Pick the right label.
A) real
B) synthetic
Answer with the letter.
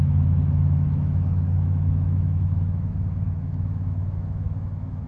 B